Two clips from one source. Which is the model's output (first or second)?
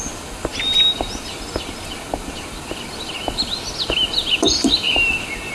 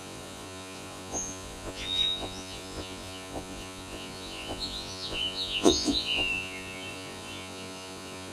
second